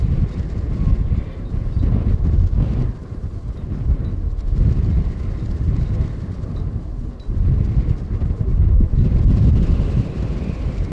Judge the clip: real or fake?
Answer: real